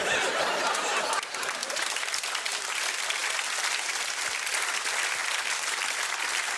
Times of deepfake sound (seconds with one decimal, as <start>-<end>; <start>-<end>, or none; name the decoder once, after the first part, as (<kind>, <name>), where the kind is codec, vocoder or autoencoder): 1.6-2.3 (vocoder, BigVGAN v2)